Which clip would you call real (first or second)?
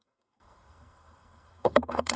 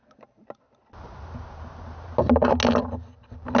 second